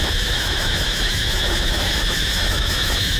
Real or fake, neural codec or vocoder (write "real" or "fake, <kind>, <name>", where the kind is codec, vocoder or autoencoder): fake, autoencoder, DAC-VAE